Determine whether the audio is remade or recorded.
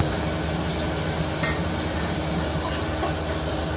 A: recorded